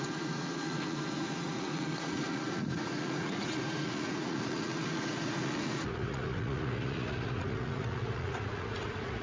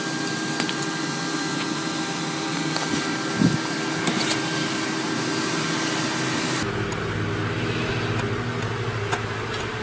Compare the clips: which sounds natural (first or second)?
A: second